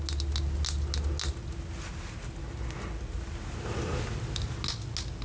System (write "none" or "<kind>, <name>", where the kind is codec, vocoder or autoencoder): none